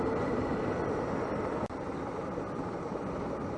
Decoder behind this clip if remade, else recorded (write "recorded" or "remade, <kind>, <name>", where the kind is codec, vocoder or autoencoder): recorded